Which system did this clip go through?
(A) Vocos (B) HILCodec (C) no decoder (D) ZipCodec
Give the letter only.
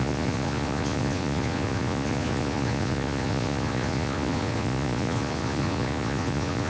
A